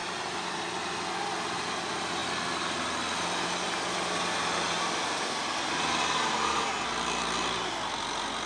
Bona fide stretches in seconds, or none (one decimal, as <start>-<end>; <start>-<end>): 0.0-8.5